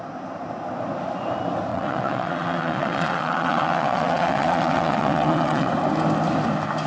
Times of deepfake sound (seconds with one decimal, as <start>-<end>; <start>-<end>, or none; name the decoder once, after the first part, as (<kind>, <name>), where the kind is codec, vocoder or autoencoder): 1.7-5.7 (vocoder, WaveNeXt)